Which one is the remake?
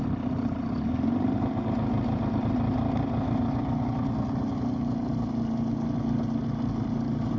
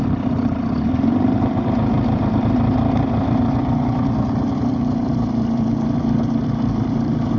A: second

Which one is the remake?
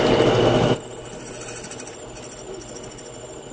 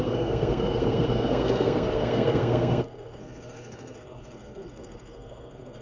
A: second